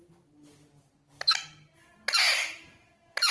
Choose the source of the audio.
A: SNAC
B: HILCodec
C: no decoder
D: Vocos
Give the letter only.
C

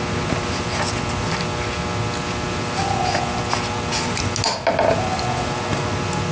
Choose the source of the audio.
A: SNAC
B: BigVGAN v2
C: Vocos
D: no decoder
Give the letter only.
D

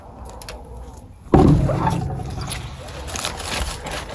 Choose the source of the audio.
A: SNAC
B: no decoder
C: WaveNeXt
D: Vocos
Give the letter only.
B